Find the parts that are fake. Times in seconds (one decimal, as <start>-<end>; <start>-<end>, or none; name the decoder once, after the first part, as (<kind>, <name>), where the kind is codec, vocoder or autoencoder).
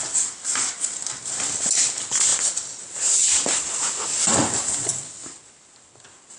none